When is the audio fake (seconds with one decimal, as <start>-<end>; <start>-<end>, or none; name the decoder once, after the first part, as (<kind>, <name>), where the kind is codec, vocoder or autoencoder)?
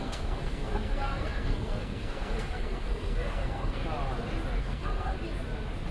0.0-3.8 (codec, SNAC); 4.6-5.1